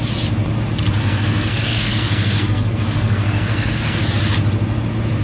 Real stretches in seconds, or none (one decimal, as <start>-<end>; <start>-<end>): 0.0-1.0; 4.1-5.2